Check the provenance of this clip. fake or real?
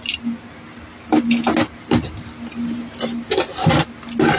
real